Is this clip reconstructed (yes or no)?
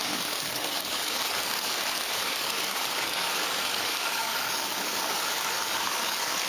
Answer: yes